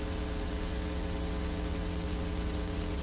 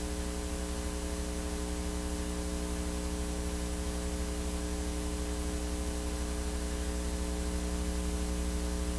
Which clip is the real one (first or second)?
second